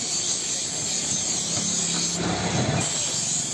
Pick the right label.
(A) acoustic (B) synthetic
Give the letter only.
A